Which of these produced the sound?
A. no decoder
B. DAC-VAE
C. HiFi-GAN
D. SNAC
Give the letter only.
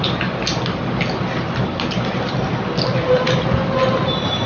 A